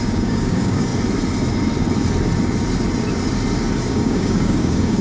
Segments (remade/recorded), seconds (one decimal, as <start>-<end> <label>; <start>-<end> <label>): 0.0-0.9 remade; 0.9-3.9 recorded; 3.9-5.0 remade